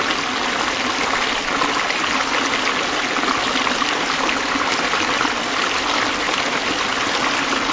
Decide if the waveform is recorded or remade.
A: recorded